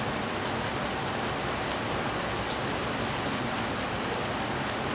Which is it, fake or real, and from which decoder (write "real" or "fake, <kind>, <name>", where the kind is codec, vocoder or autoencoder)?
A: real